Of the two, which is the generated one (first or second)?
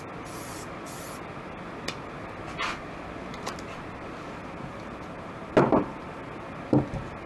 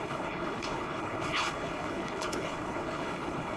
second